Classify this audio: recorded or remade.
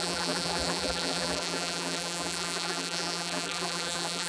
remade